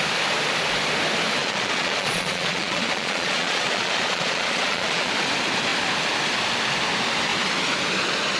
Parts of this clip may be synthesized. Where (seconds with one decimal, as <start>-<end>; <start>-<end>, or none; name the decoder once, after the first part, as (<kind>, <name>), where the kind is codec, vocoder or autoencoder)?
1.4-5.1 (vocoder, Vocos)